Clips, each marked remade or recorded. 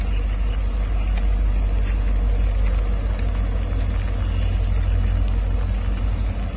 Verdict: recorded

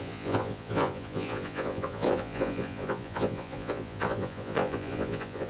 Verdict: remade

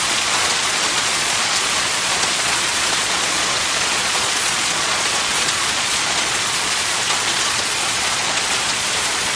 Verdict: remade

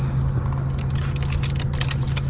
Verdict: recorded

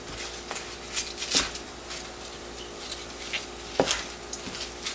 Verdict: recorded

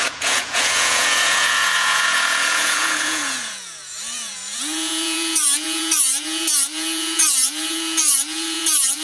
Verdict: remade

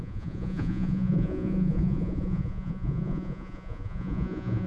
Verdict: remade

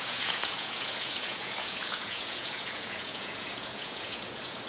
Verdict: remade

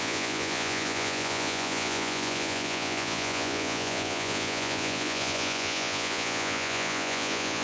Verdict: remade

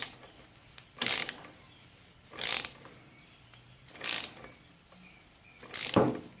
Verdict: recorded